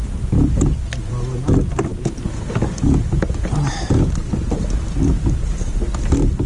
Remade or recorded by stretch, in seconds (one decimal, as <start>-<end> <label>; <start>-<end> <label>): 0.0-6.5 recorded